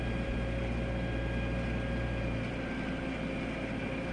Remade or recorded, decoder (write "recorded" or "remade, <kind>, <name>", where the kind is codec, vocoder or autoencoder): recorded